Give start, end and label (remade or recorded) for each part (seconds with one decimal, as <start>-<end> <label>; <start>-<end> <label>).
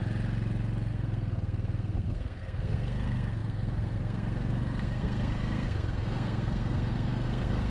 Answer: 0.0-0.9 recorded; 0.9-7.7 remade